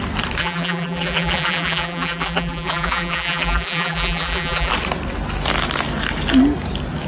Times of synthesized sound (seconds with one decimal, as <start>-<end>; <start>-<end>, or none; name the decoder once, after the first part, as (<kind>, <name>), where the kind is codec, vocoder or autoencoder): 0.4-4.7 (vocoder, BigVGAN v2)